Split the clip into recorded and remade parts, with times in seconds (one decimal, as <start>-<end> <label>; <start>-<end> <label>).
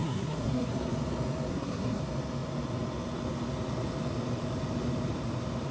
0.0-0.7 remade; 0.7-1.5 recorded; 1.5-2.0 remade; 2.0-5.7 recorded